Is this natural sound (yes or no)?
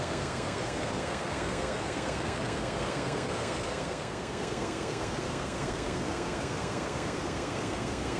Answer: no